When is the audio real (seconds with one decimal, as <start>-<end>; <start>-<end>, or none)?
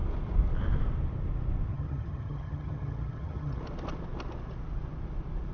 0.0-1.7; 3.6-5.5